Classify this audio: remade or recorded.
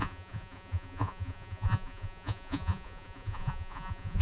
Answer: remade